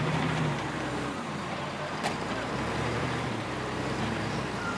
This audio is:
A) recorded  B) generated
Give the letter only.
B